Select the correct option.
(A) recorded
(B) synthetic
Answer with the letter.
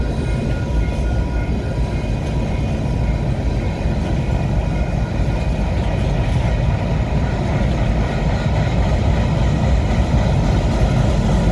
A